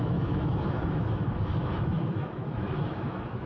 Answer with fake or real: fake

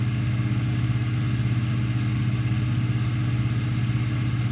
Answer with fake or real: real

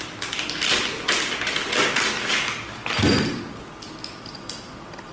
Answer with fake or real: real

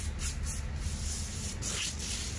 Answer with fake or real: real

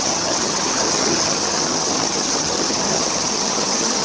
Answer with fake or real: fake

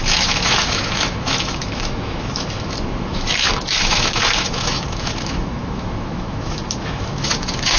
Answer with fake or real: fake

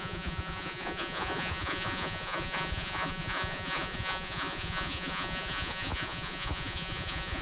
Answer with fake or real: fake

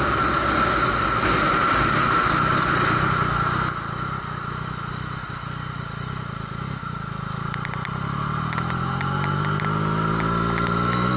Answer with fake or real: real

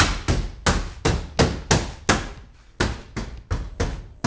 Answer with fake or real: real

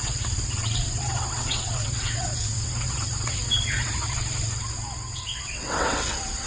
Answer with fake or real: fake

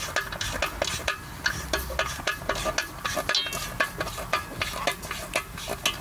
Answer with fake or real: real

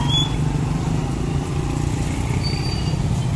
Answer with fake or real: real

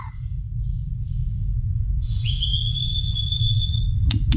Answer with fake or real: fake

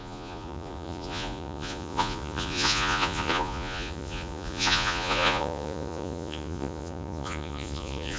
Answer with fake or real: fake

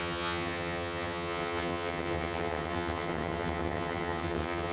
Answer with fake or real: fake